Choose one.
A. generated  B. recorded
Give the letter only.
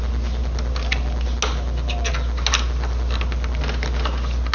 B